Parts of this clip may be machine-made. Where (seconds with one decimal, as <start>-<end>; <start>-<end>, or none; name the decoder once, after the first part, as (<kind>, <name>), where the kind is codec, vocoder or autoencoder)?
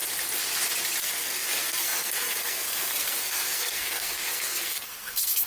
1.0-5.5 (codec, SNAC)